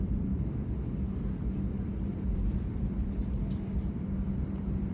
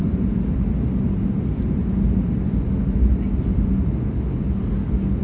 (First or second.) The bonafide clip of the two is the second